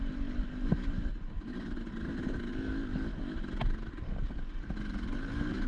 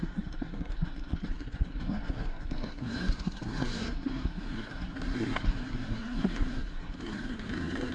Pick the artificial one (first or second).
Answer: second